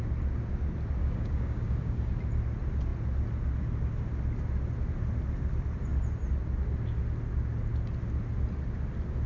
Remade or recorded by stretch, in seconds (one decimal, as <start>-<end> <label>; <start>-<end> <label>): 0.0-1.0 recorded; 1.0-2.1 remade; 2.1-9.3 recorded